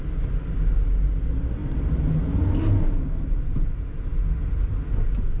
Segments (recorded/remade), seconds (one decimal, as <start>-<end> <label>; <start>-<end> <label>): 0.0-1.6 recorded; 1.6-3.4 remade; 3.4-5.4 recorded